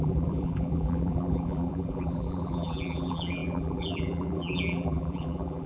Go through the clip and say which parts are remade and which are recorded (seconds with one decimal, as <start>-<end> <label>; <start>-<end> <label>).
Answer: 0.0-5.7 remade